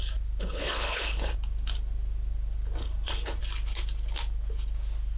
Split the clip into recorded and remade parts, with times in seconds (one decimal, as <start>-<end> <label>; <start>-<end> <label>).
0.0-0.4 recorded; 0.4-1.3 remade; 1.3-2.8 recorded; 2.8-3.4 remade; 3.4-5.2 recorded